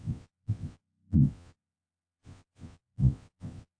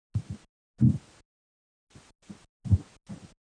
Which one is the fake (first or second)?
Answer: first